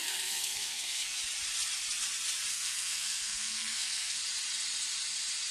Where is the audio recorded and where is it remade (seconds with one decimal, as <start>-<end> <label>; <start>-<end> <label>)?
0.0-1.2 remade; 1.2-2.5 recorded; 2.5-4.2 remade; 4.2-5.5 recorded